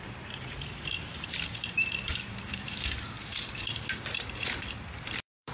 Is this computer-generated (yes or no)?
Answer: yes